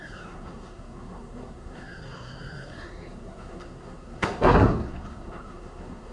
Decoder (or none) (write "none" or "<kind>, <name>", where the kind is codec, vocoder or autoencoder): codec, SNAC